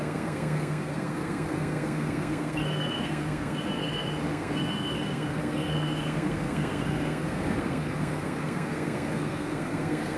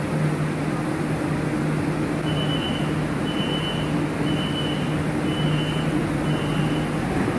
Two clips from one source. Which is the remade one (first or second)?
first